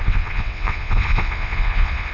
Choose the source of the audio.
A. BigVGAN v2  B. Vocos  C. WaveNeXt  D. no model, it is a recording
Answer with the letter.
C